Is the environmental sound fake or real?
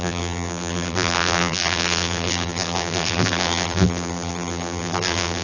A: fake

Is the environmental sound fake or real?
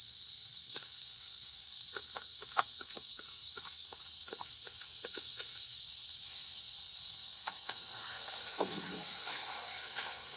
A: fake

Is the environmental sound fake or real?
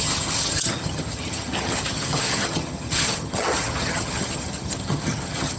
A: fake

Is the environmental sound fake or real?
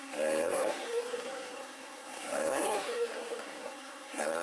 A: fake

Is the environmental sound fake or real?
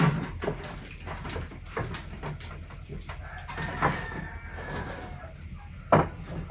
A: real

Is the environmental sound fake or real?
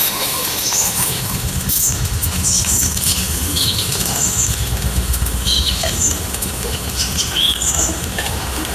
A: fake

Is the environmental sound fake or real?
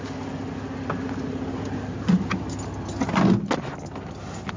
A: real